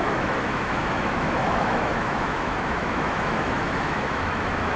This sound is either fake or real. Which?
fake